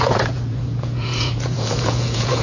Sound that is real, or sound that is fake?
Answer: fake